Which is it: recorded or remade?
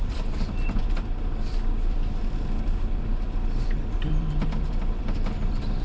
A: remade